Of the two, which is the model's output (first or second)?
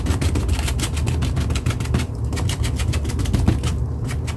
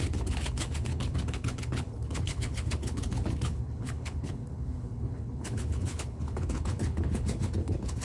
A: second